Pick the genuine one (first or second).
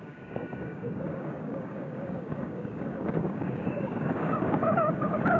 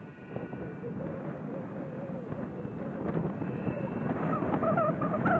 second